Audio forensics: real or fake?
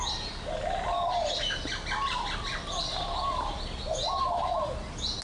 real